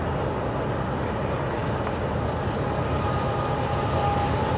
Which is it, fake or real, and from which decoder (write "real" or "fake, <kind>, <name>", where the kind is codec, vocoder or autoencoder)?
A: real